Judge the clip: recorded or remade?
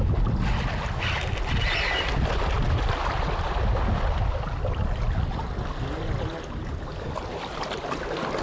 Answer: recorded